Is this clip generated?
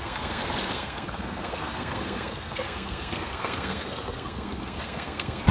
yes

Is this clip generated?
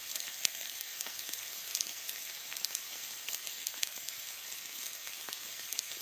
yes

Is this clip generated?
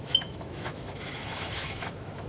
yes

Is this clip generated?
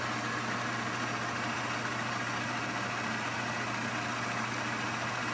no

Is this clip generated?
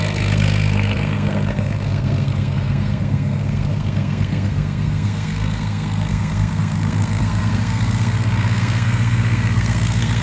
yes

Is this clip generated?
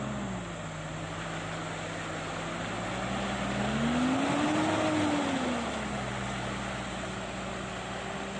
no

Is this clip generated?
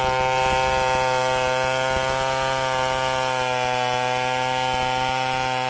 no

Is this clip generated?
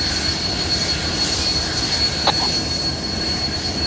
no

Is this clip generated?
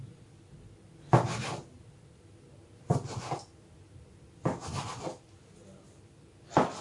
no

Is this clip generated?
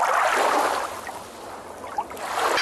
no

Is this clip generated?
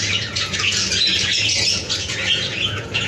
yes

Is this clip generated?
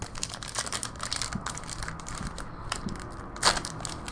no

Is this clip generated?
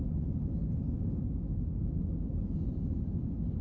no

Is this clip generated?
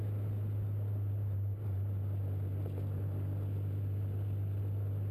no